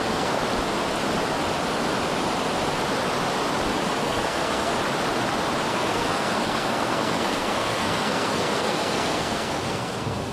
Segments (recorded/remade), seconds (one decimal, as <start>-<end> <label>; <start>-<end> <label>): 0.0-0.4 remade; 0.4-4.0 recorded; 4.0-4.7 remade; 4.7-5.7 recorded; 5.7-10.3 remade